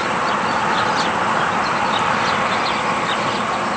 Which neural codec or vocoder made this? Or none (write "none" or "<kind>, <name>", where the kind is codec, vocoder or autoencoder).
none